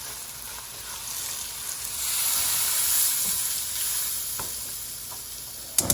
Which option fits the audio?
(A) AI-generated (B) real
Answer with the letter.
B